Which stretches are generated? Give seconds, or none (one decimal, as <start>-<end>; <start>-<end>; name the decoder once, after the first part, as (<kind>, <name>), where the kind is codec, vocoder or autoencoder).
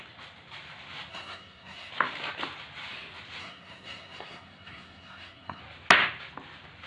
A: 1.1-1.9 (codec, SNAC); 3.4-5.6